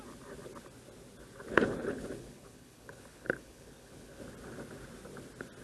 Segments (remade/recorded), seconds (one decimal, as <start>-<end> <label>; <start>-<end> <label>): 0.0-1.5 recorded; 1.5-4.2 remade; 4.2-5.6 recorded